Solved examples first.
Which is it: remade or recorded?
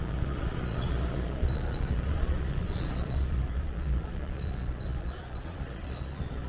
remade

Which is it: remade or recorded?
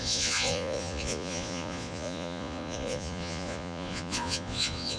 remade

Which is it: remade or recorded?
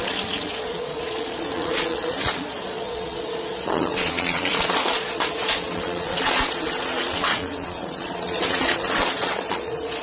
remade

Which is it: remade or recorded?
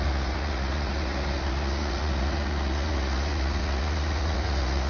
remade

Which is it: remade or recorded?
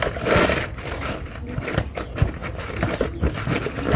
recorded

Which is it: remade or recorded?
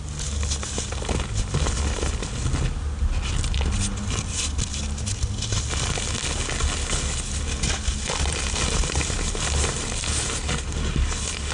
recorded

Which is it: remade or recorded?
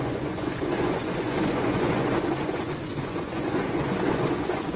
remade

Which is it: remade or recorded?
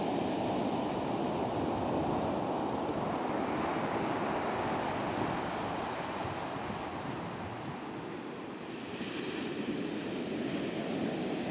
recorded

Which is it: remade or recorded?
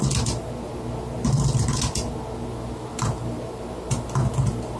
recorded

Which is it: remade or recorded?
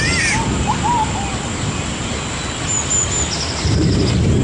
recorded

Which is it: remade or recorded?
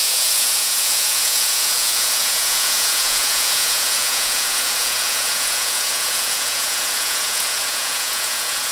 remade